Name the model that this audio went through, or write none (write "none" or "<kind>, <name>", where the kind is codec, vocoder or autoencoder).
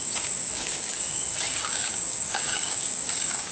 codec, DAC